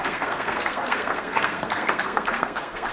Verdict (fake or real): fake